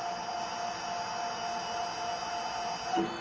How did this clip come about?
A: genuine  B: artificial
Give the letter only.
A